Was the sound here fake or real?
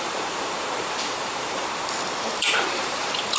fake